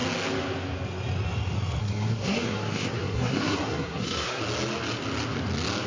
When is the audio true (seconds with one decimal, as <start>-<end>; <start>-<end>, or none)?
0.0-1.8; 4.4-5.9